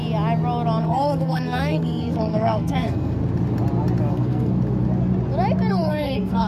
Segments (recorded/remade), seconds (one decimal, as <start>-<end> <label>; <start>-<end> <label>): 0.0-0.8 recorded; 0.8-3.2 remade; 3.2-4.1 recorded; 4.1-4.5 remade; 4.5-5.7 recorded; 5.7-6.5 remade